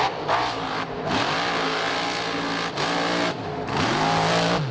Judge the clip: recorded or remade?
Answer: recorded